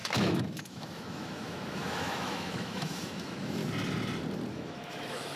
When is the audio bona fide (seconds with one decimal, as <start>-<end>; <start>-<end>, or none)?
3.6-4.5